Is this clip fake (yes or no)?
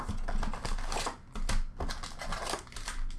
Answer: no